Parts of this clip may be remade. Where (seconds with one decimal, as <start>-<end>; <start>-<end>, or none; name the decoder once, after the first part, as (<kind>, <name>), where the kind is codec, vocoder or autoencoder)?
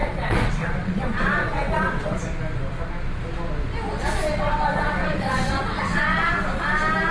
0.0-2.2 (vocoder, WaveNeXt); 4.3-6.3